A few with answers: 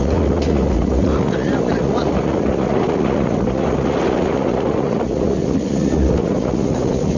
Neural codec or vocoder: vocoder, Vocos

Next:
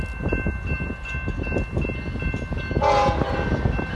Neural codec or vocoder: none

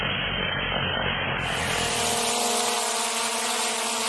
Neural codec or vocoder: none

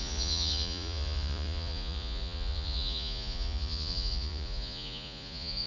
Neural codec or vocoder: vocoder, Vocos